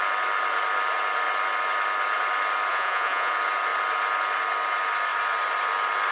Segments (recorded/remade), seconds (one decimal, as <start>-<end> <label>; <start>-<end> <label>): 0.0-2.7 recorded; 2.7-3.3 remade; 3.3-6.1 recorded